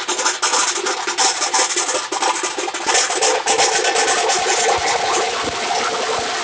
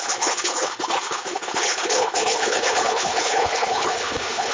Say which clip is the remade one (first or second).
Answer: second